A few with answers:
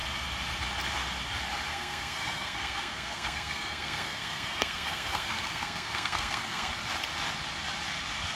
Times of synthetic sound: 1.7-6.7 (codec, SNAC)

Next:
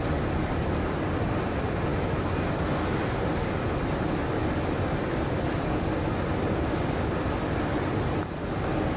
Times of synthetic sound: none

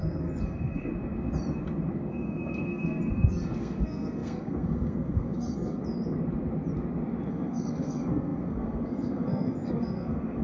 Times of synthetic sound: 0.0-0.9 (codec, SNAC); 2.1-5.8; 7.3-10.4

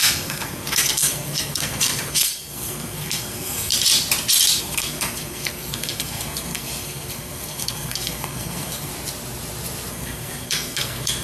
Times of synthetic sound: 0.0-3.7 (codec, SNAC); 4.6-8.9; 9.9-11.2

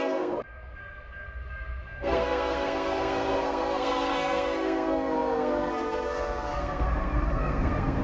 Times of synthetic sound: 0.0-8.0 (codec, SNAC)

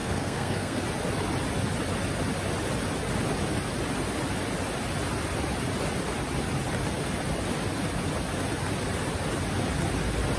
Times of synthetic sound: 0.0-0.8 (codec, SNAC)

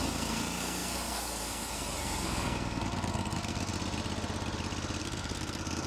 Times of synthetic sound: 0.0-3.7 (codec, SNAC); 5.0-5.9

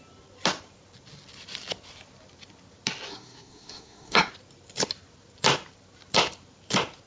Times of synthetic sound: 3.1-4.3 (codec, SNAC)